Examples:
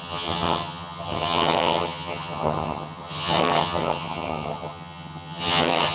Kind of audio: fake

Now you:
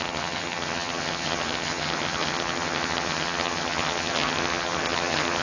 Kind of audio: fake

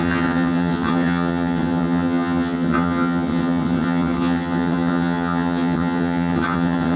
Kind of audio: fake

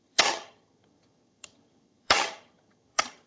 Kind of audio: fake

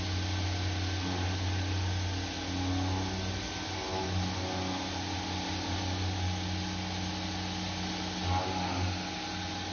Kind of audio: real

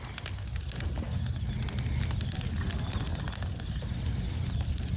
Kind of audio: real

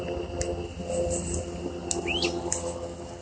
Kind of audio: real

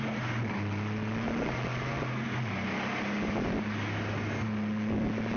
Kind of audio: real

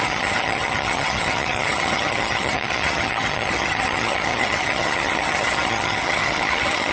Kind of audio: fake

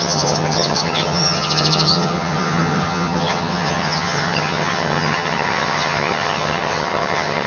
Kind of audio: fake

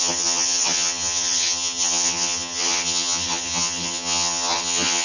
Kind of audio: fake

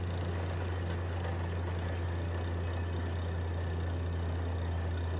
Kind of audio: real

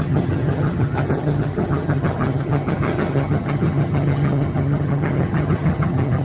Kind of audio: fake